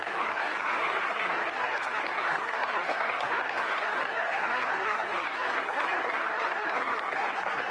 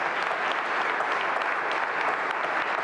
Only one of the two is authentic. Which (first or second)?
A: second